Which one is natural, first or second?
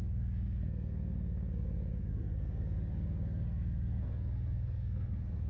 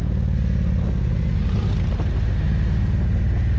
second